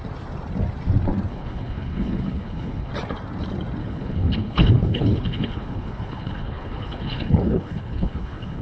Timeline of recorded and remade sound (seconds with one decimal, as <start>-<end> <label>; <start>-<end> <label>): 0.0-1.3 recorded; 1.3-2.9 remade; 2.9-3.8 recorded; 3.8-8.6 remade